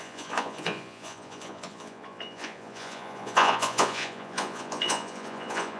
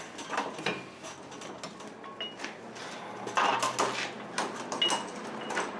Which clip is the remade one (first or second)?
first